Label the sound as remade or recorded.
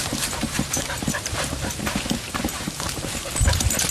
remade